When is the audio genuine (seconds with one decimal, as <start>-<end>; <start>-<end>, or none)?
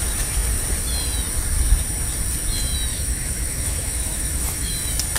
0.0-2.9; 4.7-5.2